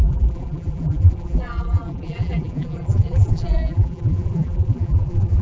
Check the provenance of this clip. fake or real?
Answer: fake